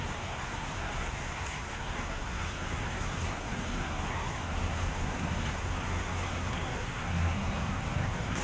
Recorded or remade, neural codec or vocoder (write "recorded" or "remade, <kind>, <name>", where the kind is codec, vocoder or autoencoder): remade, codec, SNAC